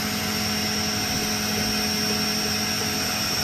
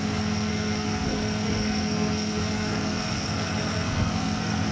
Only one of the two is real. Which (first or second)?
first